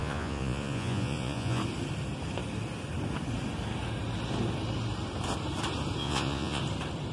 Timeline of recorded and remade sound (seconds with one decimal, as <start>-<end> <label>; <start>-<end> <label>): 0.0-1.6 remade; 1.6-6.0 recorded; 6.0-6.6 remade; 6.6-7.1 recorded